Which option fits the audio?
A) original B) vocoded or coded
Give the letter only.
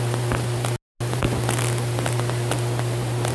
A